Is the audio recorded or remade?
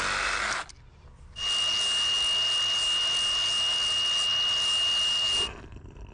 recorded